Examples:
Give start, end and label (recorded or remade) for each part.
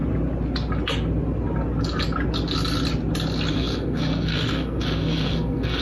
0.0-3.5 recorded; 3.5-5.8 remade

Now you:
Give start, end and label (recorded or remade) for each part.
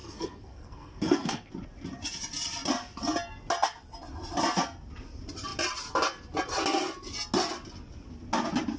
0.0-1.5 remade; 1.5-8.8 recorded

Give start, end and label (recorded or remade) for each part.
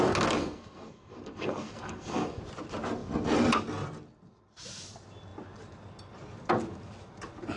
0.0-0.4 recorded; 0.4-2.4 remade; 2.4-7.6 recorded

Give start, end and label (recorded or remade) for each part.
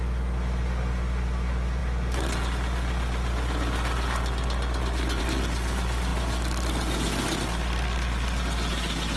0.0-9.2 recorded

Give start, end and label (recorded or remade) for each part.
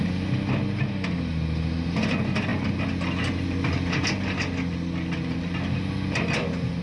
0.0-6.8 recorded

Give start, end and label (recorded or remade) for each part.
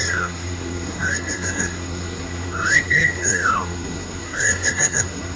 0.0-5.4 remade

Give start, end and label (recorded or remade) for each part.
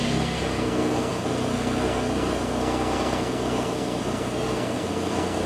0.0-5.5 remade